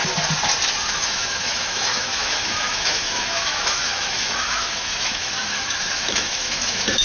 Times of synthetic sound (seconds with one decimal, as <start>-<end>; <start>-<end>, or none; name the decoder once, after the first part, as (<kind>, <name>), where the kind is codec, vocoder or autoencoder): 0.9-7.0 (autoencoder, DAC-VAE)